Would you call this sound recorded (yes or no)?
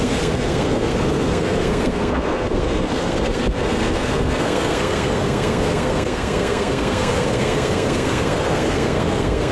no